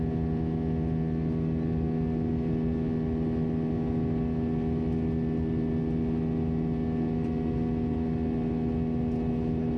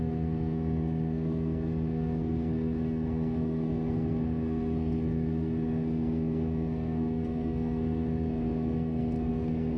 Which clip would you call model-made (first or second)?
second